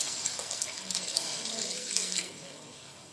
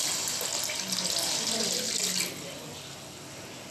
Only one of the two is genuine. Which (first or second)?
second